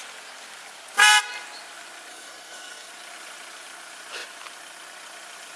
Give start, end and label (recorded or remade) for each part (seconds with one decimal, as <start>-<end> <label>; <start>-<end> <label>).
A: 0.0-2.1 recorded; 2.1-2.9 remade; 2.9-5.6 recorded